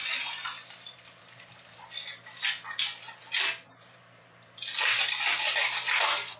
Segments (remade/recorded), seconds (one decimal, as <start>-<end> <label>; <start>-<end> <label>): 0.0-6.4 remade